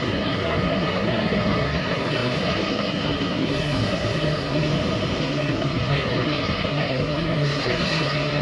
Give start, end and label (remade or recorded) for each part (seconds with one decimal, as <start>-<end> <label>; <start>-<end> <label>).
0.0-4.7 remade; 4.7-5.2 recorded; 5.2-8.4 remade